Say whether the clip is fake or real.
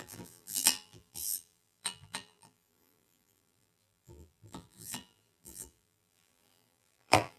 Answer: fake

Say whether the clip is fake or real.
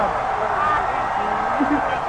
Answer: real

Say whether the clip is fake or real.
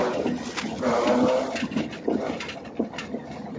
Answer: real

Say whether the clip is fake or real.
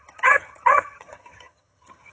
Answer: fake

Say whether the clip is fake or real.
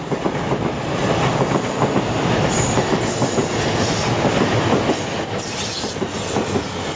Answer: real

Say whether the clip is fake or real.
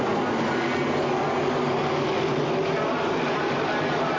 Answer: real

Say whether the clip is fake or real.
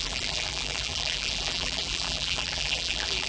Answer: fake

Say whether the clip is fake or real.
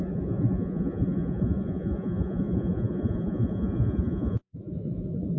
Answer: fake